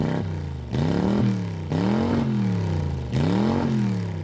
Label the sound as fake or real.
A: real